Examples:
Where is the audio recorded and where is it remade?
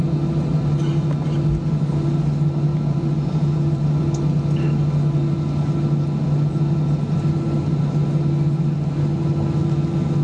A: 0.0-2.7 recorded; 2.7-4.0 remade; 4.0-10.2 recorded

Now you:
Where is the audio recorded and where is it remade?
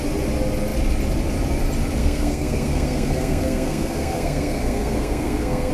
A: 0.0-2.0 recorded; 2.0-5.7 remade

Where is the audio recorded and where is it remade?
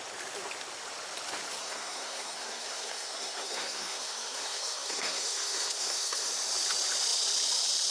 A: 0.0-1.6 recorded; 1.6-6.3 remade; 6.3-7.9 recorded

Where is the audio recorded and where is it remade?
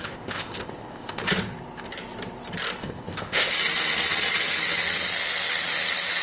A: 0.0-1.2 remade; 1.2-2.8 recorded; 2.8-3.5 remade; 3.5-6.2 recorded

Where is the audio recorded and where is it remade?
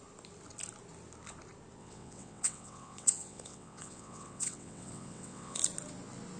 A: 0.0-1.8 recorded; 1.8-5.6 remade; 5.6-6.4 recorded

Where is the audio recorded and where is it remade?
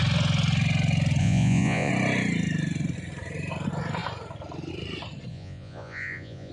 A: 0.0-1.2 recorded; 1.2-1.9 remade; 1.9-5.3 recorded; 5.3-6.5 remade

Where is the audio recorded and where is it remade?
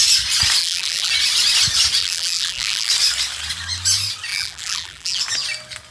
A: 0.0-0.6 recorded; 0.6-1.1 remade; 1.1-2.0 recorded; 2.0-2.9 remade; 2.9-4.3 recorded; 4.3-5.2 remade; 5.2-5.9 recorded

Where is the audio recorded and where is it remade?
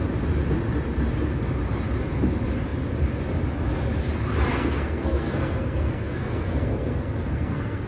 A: 0.0-4.5 recorded; 4.5-7.9 remade